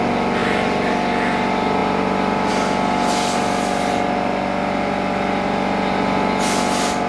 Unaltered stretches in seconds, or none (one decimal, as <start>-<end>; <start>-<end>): 0.0-7.1